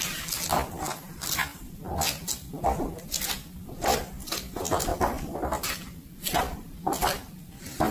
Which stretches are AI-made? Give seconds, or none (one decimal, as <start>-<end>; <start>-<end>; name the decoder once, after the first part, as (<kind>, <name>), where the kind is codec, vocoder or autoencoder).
none